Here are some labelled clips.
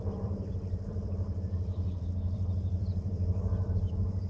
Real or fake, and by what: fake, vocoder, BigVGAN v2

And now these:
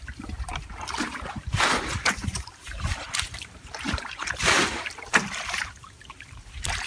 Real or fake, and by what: fake, vocoder, BigVGAN v2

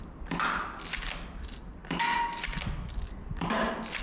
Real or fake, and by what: real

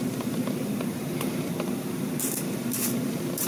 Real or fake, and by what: fake, vocoder, BigVGAN v2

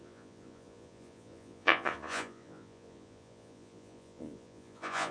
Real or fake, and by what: fake, vocoder, Vocos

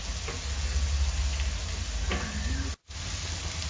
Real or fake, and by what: real